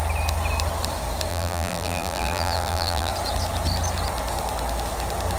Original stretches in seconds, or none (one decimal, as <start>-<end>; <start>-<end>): 0.0-1.3; 3.1-5.4